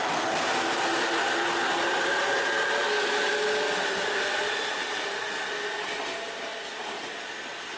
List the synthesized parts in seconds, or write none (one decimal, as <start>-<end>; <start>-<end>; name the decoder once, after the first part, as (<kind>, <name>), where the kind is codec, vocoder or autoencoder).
none